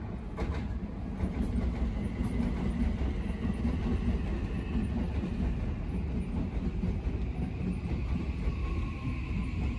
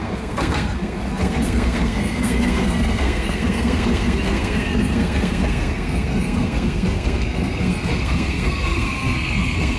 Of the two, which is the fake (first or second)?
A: second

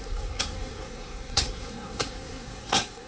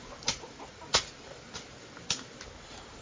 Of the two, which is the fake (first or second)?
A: first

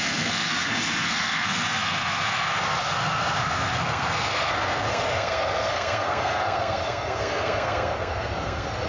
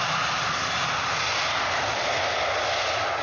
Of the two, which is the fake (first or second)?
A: first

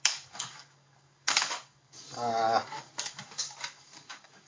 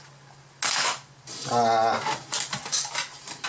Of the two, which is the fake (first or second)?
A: first